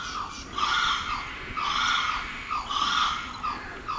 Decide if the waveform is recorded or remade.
recorded